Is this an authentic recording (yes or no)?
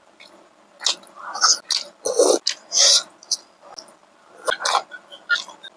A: yes